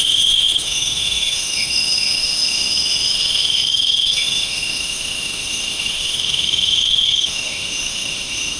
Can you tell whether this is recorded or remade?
remade